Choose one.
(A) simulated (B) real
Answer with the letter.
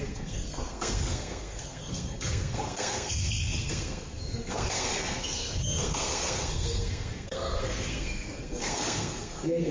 A